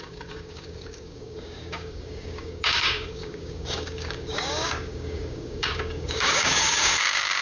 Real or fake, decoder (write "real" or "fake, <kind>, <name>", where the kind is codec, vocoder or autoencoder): fake, codec, DAC